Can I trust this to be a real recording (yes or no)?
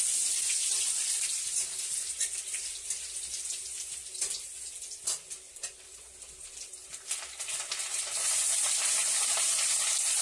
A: yes